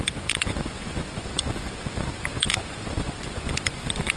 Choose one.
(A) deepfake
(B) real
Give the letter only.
A